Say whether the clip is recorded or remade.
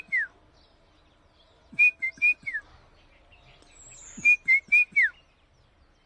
recorded